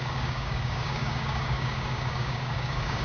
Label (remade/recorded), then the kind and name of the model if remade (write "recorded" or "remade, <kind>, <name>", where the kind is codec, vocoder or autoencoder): remade, codec, DAC